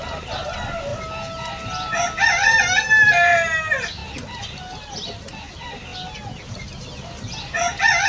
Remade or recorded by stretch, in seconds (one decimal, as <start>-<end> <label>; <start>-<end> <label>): 0.0-8.1 recorded